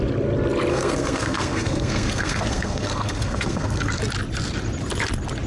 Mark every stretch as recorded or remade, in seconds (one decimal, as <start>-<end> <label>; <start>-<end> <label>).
0.0-0.7 recorded; 0.7-4.0 remade; 4.0-5.5 recorded